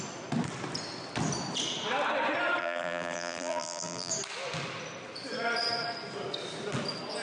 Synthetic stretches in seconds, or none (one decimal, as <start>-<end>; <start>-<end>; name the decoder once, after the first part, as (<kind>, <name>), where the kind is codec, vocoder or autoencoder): 2.6-4.1 (vocoder, BigVGAN v2)